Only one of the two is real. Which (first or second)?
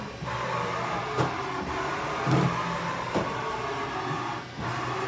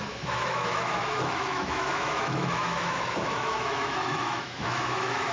first